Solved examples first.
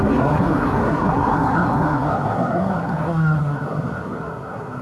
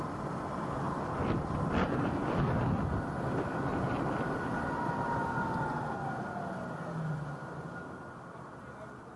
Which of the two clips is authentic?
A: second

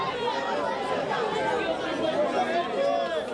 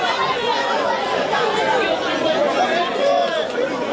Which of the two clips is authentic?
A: first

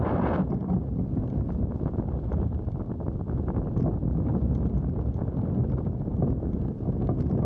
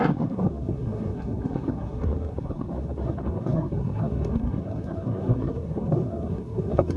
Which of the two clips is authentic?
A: first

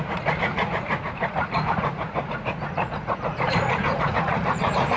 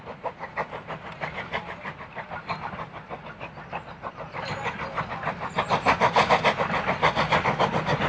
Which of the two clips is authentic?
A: second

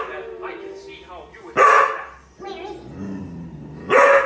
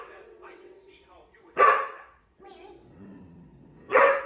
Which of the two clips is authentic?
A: first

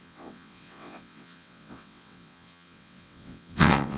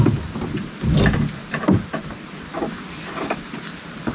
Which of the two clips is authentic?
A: second